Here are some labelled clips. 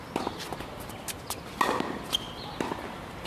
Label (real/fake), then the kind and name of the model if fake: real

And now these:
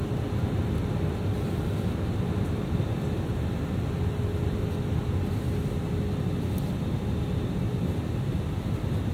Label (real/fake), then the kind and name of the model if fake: real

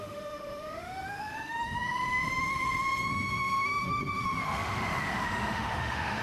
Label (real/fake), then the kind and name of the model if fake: fake, autoencoder, DAC-VAE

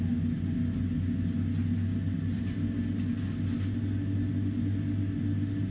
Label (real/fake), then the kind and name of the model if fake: real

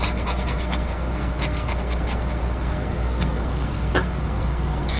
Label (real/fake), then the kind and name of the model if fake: fake, codec, SNAC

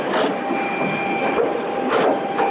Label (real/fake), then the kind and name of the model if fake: real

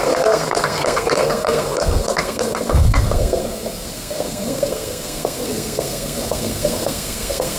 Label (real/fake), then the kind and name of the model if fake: fake, codec, SNAC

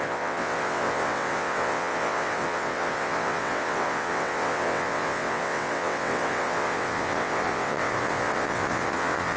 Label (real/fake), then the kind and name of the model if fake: fake, vocoder, WaveNeXt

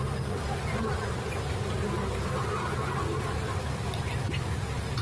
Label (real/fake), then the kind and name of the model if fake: real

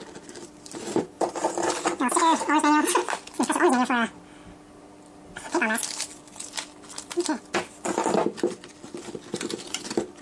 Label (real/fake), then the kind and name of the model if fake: real